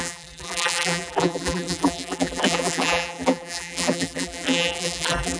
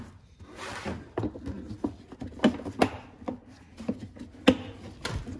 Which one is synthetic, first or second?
first